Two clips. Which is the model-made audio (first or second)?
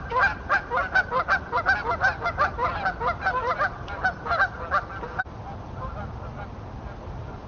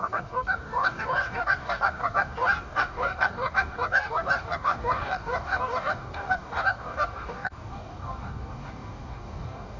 second